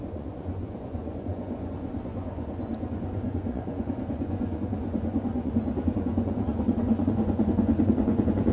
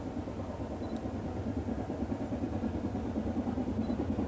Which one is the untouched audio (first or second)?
second